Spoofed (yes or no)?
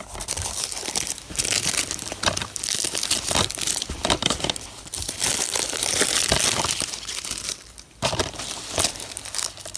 yes